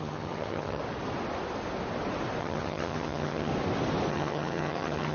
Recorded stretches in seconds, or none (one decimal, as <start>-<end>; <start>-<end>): 0.8-2.4; 3.5-4.1